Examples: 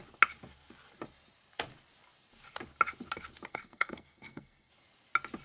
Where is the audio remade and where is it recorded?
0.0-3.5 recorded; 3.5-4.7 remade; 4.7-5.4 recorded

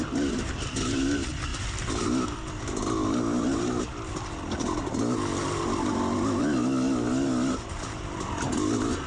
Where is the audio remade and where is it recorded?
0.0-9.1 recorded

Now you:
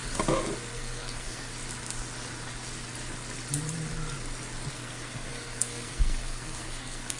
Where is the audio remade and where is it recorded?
0.0-0.7 recorded; 0.7-1.5 remade; 1.5-4.7 recorded; 4.7-7.2 remade

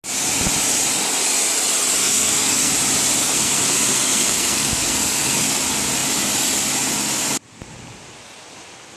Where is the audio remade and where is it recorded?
0.0-2.0 recorded; 2.0-2.7 remade; 2.7-3.2 recorded; 3.2-5.6 remade; 5.6-9.0 recorded

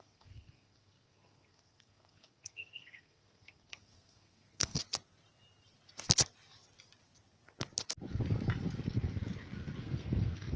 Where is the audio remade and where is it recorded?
0.0-4.8 remade; 4.8-9.8 recorded; 9.8-10.6 remade

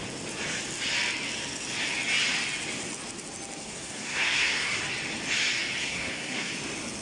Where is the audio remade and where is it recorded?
0.0-3.6 recorded; 3.6-4.8 remade; 4.8-5.8 recorded; 5.8-6.5 remade; 6.5-7.0 recorded

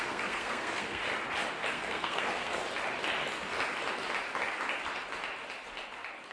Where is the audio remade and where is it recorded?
0.0-1.0 remade; 1.0-1.7 recorded; 1.7-2.6 remade; 2.6-6.3 recorded